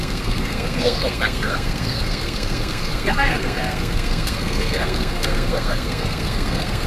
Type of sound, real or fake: fake